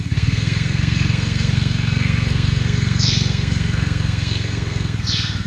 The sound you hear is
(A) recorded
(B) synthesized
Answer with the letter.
B